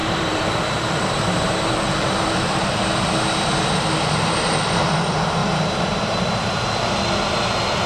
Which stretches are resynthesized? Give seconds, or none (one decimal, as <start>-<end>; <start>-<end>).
0.0-2.8; 5.4-6.5